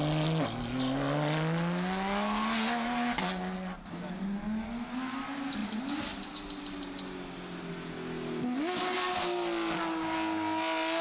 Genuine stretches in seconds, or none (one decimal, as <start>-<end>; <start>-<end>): 0.0-11.0